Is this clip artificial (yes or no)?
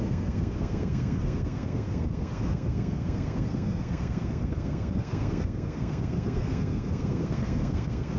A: yes